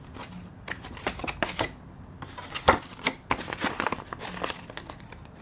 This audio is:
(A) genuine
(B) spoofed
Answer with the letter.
A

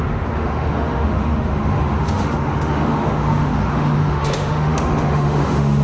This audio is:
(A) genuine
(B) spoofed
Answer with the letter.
B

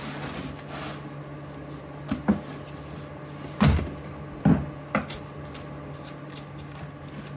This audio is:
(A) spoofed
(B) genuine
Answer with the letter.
B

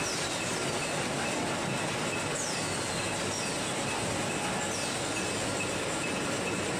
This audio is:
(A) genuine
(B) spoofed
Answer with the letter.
A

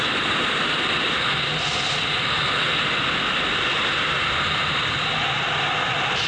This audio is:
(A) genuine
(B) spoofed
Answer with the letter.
A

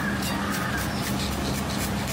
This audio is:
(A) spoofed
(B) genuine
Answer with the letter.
B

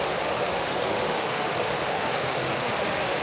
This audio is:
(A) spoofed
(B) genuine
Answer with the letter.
A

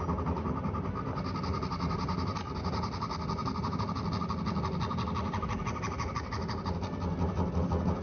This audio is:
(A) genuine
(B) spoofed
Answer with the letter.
A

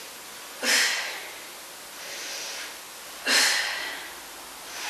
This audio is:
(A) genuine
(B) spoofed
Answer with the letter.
A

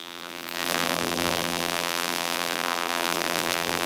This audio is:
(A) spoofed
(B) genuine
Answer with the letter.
A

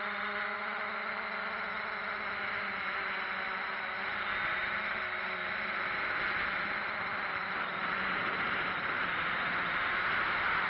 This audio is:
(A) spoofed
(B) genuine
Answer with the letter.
B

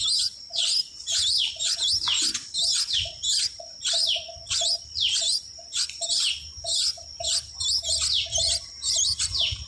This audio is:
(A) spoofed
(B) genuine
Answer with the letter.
A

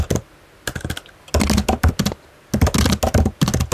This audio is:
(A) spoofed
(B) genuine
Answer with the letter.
B